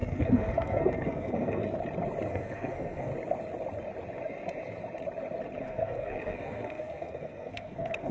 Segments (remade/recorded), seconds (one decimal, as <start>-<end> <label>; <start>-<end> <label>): 0.0-1.6 remade; 1.6-2.3 recorded; 2.3-3.1 remade; 3.1-5.6 recorded; 5.6-8.1 remade